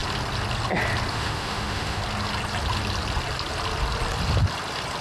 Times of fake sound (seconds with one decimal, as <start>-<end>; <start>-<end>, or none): 1.1-2.0